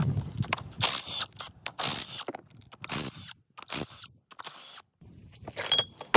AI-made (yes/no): no